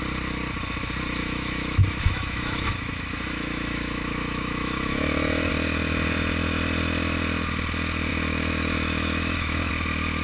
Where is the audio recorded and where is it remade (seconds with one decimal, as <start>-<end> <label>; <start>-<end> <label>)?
0.0-1.2 recorded; 1.2-5.5 remade; 5.5-8.1 recorded; 8.1-9.7 remade; 9.7-10.2 recorded